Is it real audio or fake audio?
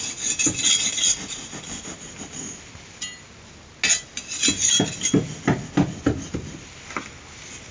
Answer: real